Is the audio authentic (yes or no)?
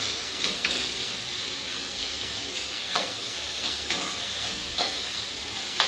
no